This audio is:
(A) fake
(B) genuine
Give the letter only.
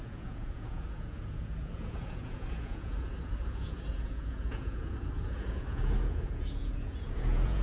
A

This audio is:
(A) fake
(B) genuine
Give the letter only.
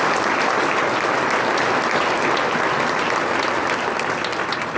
B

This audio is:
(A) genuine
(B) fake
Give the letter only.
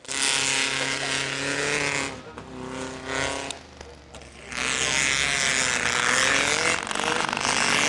A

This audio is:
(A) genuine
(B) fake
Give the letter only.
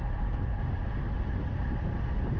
A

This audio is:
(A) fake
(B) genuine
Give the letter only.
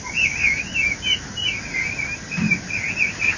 B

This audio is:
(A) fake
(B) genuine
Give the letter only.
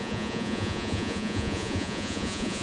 A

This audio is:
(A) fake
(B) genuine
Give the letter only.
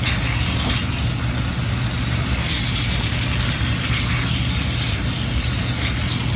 B